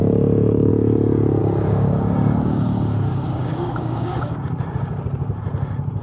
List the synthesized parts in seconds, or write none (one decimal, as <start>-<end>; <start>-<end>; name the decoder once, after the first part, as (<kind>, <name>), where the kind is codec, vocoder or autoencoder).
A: 0.0-0.7 (codec, DAC); 1.4-4.4

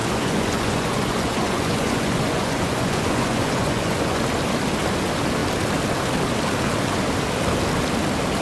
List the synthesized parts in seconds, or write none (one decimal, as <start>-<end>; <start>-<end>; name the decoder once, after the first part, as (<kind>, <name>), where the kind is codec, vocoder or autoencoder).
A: 0.0-4.2 (vocoder, Vocos)

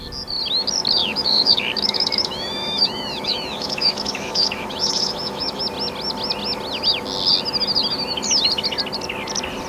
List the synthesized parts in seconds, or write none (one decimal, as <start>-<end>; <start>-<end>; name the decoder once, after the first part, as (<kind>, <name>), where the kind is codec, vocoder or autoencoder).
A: 1.0-5.6 (autoencoder, DAC-VAE)

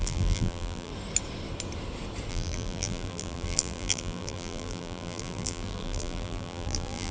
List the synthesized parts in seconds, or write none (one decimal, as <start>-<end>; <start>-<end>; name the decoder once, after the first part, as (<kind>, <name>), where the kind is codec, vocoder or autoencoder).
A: 0.0-0.9 (vocoder, BigVGAN v2); 2.3-7.1

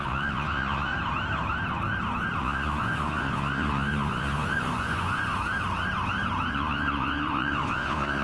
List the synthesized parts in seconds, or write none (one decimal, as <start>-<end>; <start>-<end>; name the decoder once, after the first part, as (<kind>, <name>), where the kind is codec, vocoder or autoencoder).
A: 0.0-0.9 (vocoder, Vocos); 2.4-5.3; 6.5-8.2

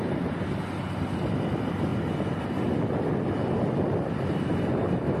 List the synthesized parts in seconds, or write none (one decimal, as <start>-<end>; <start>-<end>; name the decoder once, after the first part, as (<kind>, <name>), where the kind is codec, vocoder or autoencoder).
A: none

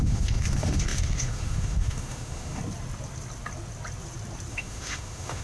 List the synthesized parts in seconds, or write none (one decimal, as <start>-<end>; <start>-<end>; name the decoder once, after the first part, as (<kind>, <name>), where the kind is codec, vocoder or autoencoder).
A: 0.0-2.6 (autoencoder, DAC-VAE); 4.5-5.4

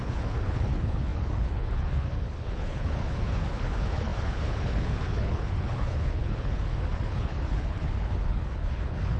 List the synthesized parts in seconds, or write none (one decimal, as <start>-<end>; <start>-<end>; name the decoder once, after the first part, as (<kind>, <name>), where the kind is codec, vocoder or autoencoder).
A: 0.0-9.2 (codec, HILCodec)